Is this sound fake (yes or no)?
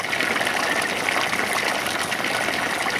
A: no